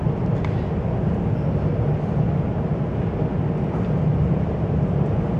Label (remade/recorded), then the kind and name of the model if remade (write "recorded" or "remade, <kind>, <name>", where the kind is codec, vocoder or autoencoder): recorded